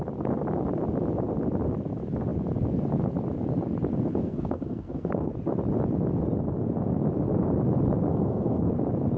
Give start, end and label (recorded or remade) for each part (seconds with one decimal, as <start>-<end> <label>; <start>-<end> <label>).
0.0-4.2 recorded; 4.2-5.3 remade; 5.3-8.1 recorded; 8.1-8.7 remade; 8.7-9.2 recorded